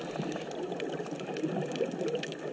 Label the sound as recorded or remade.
recorded